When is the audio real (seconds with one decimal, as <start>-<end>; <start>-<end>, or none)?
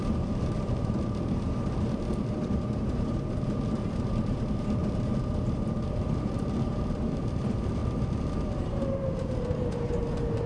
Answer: 7.8-8.4